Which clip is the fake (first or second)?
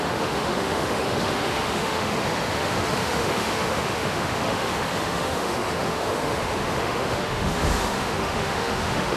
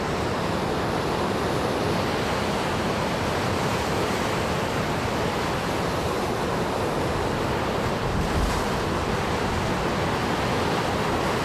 first